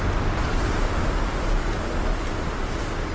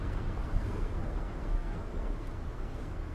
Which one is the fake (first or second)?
second